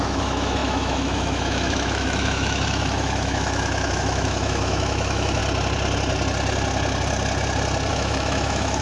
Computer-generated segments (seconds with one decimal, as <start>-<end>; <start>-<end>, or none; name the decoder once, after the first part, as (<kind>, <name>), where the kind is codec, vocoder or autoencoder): 0.0-5.4 (autoencoder, DAC-VAE); 7.9-8.8

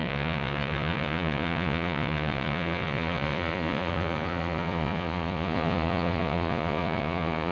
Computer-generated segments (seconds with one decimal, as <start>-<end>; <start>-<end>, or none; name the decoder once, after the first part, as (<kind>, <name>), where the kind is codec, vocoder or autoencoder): 0.0-7.5 (vocoder, Vocos)

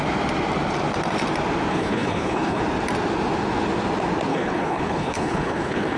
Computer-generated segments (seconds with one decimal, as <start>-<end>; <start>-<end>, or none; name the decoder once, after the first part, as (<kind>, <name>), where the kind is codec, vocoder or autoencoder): 1.7-2.6 (codec, HILCodec); 4.3-6.0

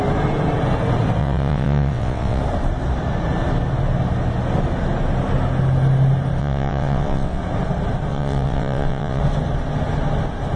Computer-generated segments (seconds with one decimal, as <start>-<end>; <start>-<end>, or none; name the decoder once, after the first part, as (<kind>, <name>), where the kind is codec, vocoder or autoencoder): 1.2-2.4 (vocoder, WaveNeXt); 6.4-7.4; 8.1-9.2